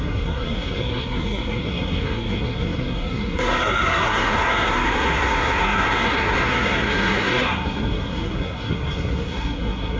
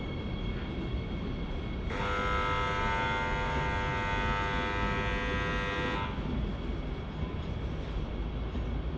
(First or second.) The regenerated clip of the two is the first